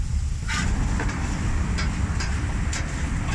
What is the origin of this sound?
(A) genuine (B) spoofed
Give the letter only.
A